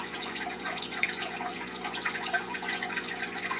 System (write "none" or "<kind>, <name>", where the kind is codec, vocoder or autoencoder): vocoder, Vocos